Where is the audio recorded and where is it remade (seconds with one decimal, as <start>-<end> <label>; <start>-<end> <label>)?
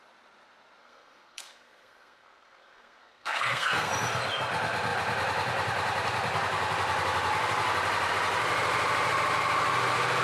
0.0-0.8 recorded; 0.8-3.9 remade; 3.9-10.2 recorded